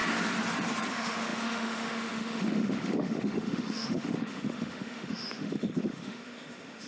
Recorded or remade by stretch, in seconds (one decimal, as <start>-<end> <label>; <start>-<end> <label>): 0.0-0.9 recorded; 0.9-6.9 remade